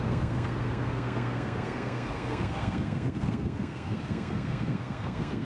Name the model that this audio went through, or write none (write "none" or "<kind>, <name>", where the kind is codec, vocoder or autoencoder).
codec, SNAC